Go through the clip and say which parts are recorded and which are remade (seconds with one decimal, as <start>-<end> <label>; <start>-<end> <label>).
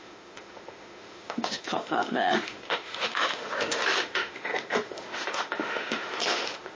0.0-6.7 remade